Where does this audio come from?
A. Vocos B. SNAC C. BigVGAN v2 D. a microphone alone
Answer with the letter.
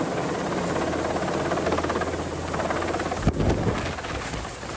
D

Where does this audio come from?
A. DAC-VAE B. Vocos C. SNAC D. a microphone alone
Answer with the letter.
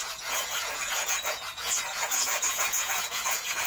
B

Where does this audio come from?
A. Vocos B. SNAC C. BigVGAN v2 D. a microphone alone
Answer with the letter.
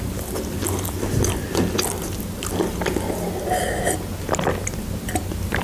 D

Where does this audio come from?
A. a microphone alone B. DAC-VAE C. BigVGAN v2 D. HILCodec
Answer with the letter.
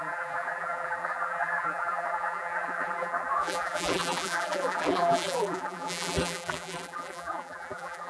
C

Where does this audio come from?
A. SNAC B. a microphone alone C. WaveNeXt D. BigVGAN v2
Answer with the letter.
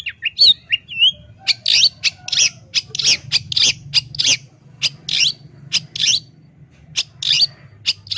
B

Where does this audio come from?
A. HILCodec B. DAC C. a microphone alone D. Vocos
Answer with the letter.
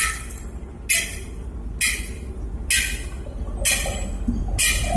C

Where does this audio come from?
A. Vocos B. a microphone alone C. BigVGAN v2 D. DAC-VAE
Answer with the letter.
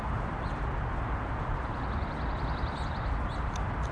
B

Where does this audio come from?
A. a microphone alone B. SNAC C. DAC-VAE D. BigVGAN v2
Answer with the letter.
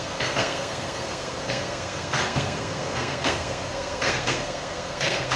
B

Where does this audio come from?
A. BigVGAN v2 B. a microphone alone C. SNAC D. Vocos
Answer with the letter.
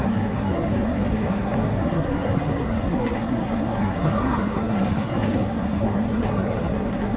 C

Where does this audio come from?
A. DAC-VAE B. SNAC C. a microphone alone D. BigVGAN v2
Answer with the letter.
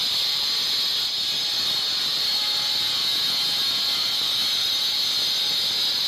C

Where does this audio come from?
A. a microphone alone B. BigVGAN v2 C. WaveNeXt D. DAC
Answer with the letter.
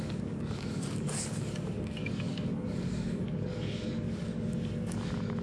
D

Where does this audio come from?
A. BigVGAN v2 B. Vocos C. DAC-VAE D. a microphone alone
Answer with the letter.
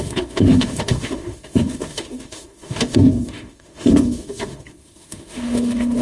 C